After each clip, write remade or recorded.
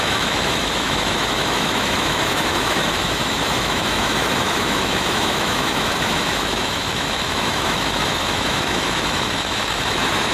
remade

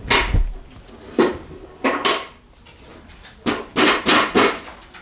recorded